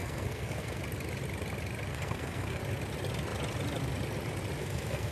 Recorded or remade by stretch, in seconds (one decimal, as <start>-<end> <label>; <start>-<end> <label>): 0.0-0.8 remade; 0.8-1.9 recorded; 1.9-2.6 remade; 2.6-4.6 recorded; 4.6-5.1 remade